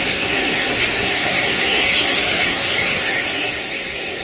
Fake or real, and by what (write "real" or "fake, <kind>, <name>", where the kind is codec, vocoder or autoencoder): fake, codec, SNAC